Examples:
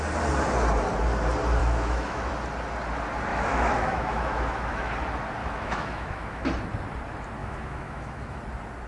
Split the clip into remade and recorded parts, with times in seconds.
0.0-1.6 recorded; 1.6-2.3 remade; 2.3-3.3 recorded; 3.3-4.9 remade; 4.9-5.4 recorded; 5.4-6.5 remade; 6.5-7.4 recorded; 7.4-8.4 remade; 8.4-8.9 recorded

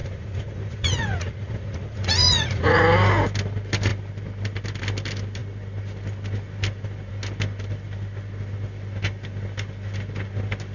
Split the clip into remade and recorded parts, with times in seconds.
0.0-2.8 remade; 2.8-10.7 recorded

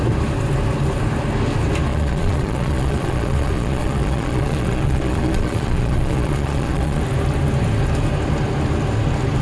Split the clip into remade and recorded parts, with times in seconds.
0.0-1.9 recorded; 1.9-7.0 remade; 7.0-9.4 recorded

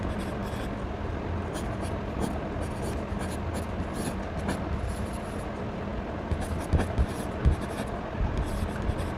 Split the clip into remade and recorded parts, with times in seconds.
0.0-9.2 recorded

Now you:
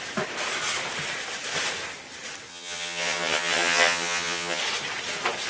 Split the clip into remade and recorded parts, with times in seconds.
0.0-2.5 recorded; 2.5-4.6 remade; 4.6-5.5 recorded

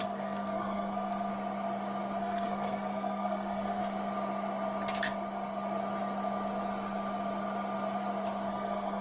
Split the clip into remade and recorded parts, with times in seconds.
0.0-1.3 remade; 1.3-2.2 recorded; 2.2-3.8 remade; 3.8-8.5 recorded; 8.5-9.0 remade